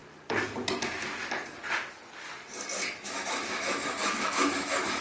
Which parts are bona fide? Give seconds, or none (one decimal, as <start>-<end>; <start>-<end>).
0.0-3.0